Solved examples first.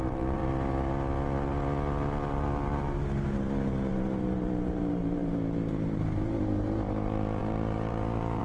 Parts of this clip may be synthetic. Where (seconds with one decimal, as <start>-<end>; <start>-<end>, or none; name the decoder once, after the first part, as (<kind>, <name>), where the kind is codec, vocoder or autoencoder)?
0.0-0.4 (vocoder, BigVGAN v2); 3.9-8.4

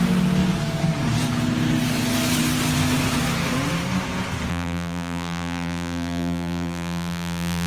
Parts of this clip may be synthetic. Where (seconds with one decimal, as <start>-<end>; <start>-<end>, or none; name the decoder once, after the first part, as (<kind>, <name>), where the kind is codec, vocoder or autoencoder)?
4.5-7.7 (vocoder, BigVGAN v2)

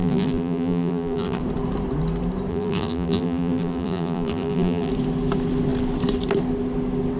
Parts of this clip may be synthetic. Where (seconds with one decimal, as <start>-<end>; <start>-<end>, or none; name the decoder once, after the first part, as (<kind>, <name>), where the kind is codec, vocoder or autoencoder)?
0.0-1.4 (vocoder, BigVGAN v2); 2.5-4.9

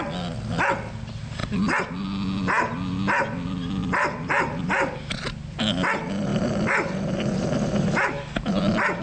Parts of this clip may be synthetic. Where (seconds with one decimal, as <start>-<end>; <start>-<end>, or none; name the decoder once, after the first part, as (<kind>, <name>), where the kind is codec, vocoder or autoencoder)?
3.8-5.6 (vocoder, BigVGAN v2); 6.3-9.0

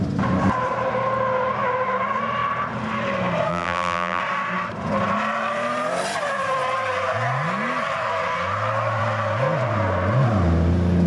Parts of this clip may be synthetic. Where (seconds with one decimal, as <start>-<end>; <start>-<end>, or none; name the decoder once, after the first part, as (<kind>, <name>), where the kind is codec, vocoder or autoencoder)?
3.5-4.2 (vocoder, BigVGAN v2)